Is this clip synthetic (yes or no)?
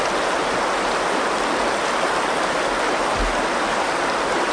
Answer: no